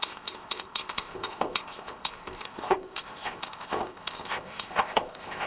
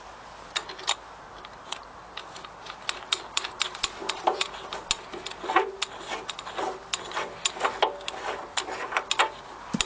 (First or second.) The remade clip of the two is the first